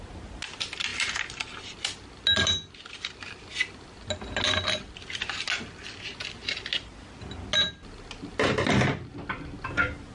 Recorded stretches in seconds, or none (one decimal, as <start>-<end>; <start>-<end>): 0.0-10.1